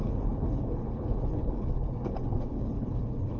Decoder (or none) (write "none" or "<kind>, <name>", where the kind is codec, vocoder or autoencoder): codec, HILCodec